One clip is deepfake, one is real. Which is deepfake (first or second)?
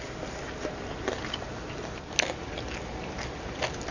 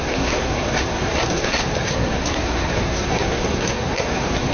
second